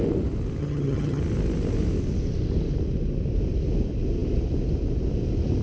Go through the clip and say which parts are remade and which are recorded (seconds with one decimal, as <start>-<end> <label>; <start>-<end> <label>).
0.0-0.6 recorded; 0.6-1.2 remade; 1.2-5.6 recorded